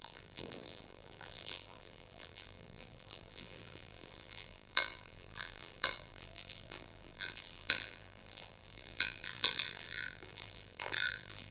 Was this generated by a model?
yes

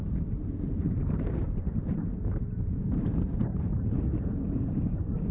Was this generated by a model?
yes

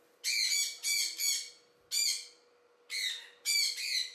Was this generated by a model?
no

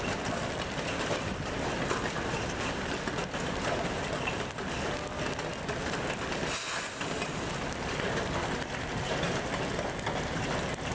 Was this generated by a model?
no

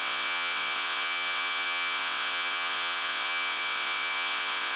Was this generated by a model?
yes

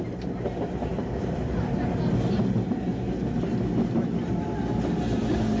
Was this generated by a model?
no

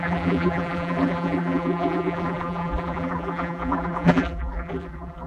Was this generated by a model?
yes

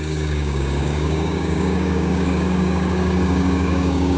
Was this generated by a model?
yes